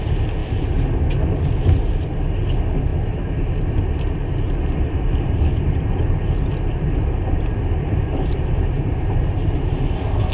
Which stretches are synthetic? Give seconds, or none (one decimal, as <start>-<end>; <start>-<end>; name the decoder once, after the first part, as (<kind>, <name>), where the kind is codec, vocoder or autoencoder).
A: none